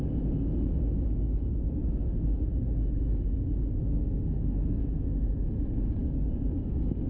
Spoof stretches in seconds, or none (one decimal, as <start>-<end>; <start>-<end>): 4.0-4.8